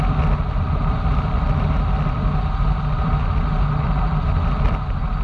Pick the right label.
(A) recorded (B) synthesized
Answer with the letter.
A